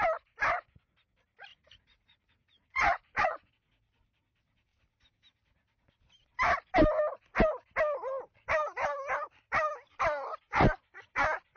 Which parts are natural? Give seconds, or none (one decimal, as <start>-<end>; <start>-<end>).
0.0-1.5; 3.5-11.6